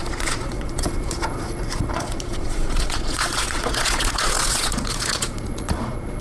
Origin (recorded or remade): remade